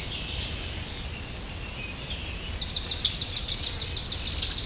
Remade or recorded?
recorded